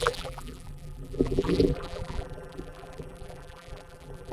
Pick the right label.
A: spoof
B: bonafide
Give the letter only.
A